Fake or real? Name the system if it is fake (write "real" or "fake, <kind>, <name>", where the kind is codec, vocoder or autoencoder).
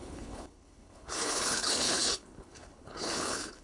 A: fake, codec, HILCodec